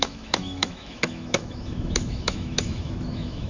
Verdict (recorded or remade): remade